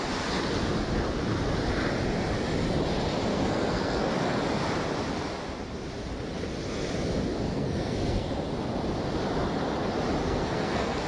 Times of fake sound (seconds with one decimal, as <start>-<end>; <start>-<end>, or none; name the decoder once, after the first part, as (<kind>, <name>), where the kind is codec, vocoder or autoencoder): 3.3-4.1 (codec, SNAC); 7.5-8.3; 10.2-11.1